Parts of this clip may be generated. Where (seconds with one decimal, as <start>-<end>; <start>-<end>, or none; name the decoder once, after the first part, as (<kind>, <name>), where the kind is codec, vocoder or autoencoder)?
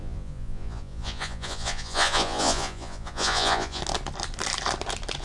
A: 0.0-3.8 (vocoder, Vocos)